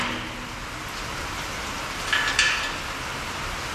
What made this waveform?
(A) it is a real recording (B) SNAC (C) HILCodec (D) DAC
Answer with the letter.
A